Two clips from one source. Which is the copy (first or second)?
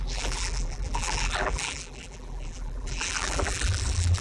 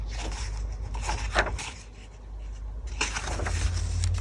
first